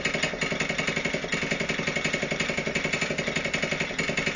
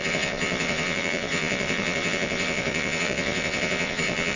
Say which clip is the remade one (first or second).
second